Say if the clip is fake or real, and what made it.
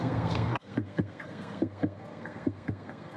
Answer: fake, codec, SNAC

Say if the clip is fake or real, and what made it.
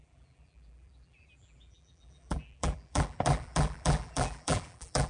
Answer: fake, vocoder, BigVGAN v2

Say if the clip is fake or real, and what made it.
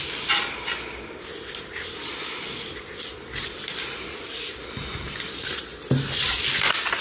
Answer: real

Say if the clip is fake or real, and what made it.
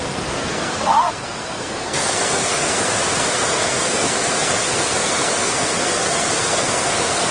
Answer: fake, codec, SNAC